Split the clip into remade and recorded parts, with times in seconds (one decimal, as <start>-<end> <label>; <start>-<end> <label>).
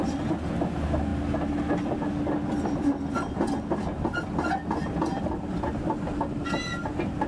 0.0-7.3 recorded